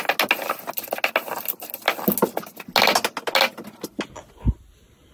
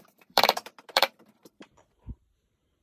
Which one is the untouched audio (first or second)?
first